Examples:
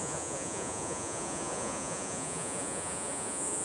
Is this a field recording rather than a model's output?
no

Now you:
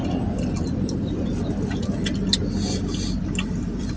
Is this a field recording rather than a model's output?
yes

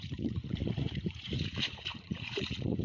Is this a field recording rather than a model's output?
no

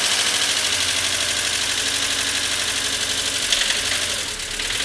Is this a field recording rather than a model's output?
yes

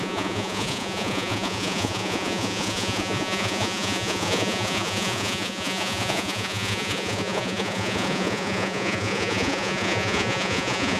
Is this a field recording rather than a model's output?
no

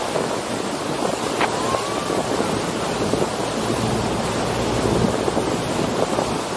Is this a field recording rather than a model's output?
yes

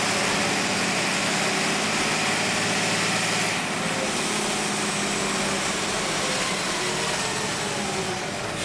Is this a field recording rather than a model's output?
yes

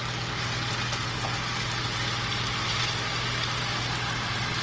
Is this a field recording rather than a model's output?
yes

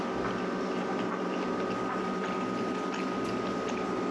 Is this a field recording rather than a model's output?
yes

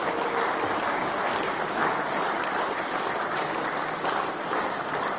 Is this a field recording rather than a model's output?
yes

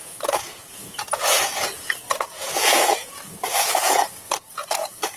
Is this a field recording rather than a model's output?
no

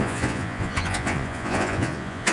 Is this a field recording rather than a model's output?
no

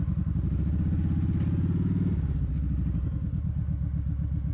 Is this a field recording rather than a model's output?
yes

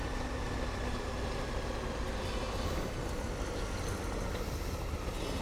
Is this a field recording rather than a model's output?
yes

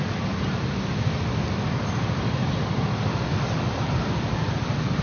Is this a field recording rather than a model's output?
yes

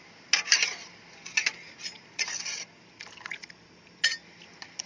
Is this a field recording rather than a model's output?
yes